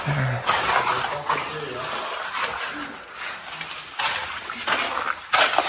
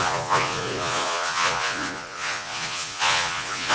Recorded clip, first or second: first